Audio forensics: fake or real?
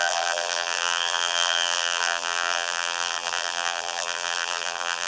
fake